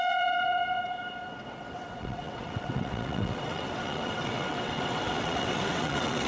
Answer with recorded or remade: remade